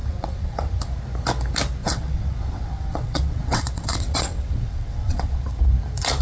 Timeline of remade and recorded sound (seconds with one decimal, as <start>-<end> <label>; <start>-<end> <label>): 0.0-0.7 remade; 0.7-1.8 recorded; 1.8-5.5 remade; 5.5-6.2 recorded